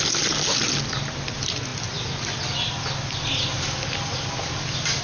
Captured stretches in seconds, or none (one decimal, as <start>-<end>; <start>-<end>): 0.0-5.0